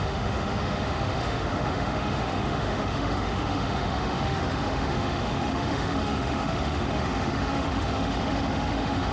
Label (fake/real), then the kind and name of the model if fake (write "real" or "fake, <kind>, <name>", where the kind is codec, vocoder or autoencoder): fake, autoencoder, DAC-VAE